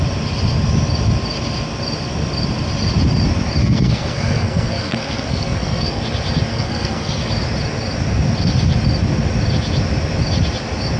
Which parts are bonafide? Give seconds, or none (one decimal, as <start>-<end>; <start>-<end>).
0.0-3.6; 6.0-6.5; 7.3-11.0